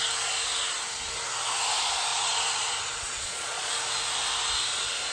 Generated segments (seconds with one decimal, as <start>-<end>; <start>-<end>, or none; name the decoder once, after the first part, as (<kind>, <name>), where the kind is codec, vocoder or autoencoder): 2.1-3.7 (vocoder, Vocos)